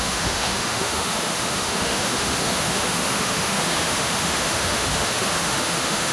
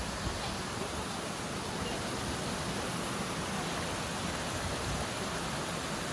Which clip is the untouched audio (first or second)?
second